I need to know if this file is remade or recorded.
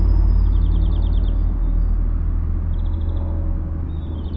recorded